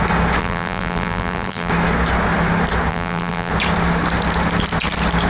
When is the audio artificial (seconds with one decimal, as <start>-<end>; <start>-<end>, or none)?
0.4-1.7; 2.9-3.5